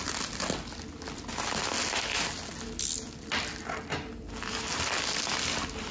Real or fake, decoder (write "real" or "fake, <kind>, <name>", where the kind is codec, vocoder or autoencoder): real